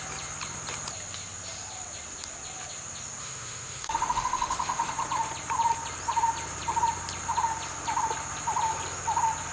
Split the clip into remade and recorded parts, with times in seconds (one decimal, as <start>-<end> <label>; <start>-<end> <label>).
0.0-3.2 recorded; 3.2-4.9 remade; 4.9-9.5 recorded